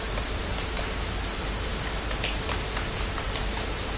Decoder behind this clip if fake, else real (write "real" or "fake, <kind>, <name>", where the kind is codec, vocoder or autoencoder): real